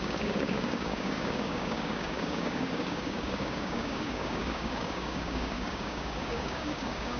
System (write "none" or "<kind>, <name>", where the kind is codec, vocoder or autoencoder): codec, DAC